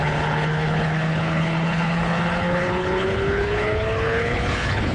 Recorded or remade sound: remade